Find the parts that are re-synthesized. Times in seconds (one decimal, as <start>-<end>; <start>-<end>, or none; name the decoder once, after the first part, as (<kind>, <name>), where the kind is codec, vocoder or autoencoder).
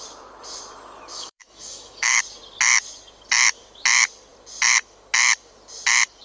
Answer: 1.1-2.2 (autoencoder, DAC-VAE)